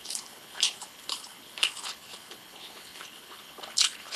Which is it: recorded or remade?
remade